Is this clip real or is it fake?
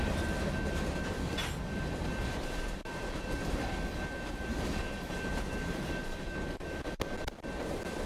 real